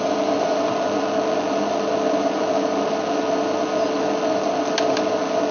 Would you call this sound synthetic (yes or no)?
no